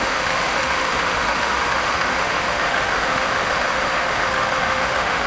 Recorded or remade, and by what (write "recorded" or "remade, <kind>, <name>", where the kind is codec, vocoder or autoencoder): remade, autoencoder, DAC-VAE